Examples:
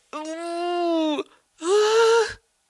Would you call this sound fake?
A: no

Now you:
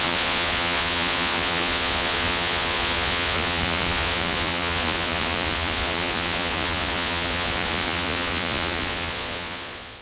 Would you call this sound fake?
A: yes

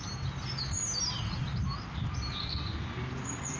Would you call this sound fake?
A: no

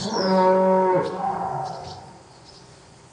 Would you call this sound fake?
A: yes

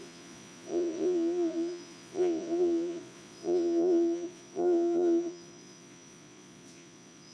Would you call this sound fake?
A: yes